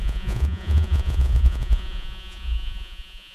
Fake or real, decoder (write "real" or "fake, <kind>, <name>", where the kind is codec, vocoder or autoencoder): fake, vocoder, Vocos